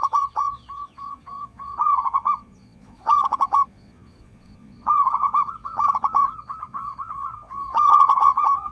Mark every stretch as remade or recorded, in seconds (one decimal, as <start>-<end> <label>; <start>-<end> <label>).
0.0-8.7 remade